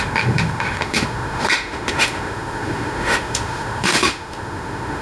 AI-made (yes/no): yes